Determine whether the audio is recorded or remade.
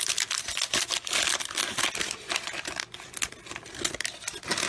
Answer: recorded